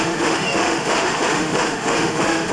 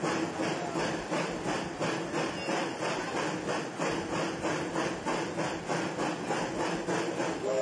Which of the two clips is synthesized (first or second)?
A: first